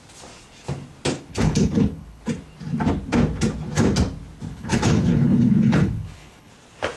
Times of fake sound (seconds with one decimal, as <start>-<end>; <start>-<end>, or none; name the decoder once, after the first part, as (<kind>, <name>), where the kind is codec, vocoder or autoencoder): 1.3-2.2 (codec, HILCodec); 4.5-6.5